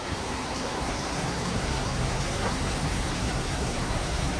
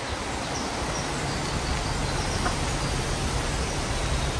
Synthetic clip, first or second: first